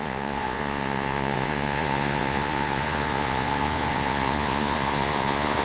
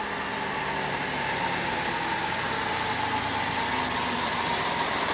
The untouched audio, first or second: second